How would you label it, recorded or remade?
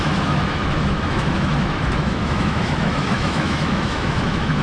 remade